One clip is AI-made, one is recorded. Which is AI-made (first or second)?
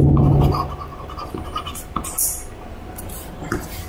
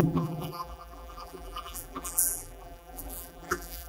second